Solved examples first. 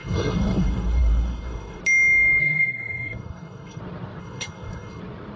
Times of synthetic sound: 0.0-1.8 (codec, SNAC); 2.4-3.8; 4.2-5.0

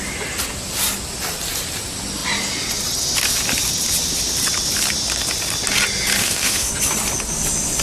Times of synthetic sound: 6.2-6.7 (autoencoder, DAC-VAE)